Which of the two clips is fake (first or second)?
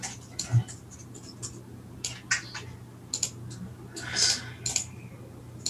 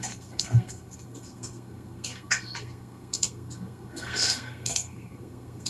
second